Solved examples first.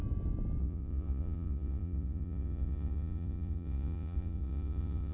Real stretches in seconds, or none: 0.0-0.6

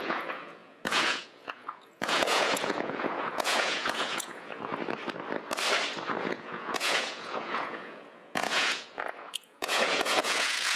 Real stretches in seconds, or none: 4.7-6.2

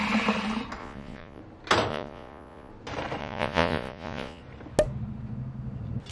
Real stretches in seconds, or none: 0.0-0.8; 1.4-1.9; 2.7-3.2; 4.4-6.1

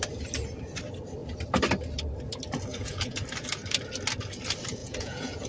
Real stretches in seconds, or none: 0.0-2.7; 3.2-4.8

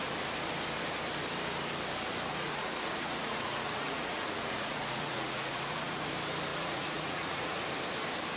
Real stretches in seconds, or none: 0.0-2.3; 6.1-6.5; 7.6-8.4

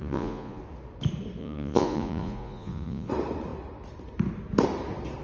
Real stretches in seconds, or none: 0.6-1.4; 3.1-5.2

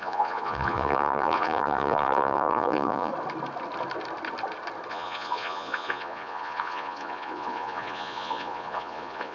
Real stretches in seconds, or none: 3.1-4.9

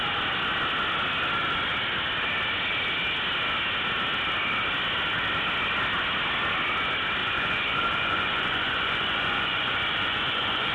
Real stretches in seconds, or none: 0.0-7.2